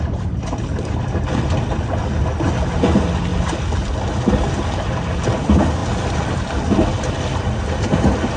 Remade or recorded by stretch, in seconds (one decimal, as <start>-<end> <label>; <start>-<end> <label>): 0.0-0.7 recorded; 0.7-2.0 remade; 2.0-8.4 recorded